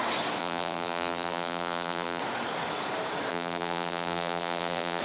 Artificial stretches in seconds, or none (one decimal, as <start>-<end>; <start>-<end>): 0.4-2.2; 3.3-5.0